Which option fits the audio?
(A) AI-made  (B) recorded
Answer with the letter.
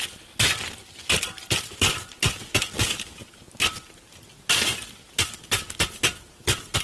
B